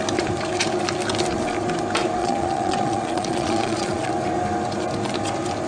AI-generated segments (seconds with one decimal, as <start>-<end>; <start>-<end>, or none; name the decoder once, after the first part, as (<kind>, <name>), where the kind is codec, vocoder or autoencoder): 2.2-4.1 (vocoder, Vocos)